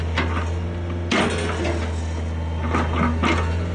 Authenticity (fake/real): real